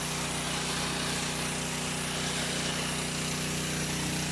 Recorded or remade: recorded